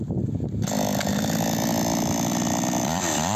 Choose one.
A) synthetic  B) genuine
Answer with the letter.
B